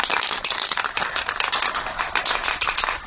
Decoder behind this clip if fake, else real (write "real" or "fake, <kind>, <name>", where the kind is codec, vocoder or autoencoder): real